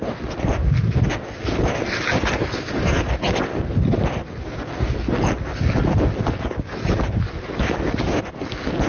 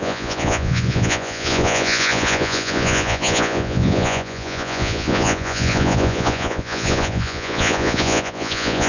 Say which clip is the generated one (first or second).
second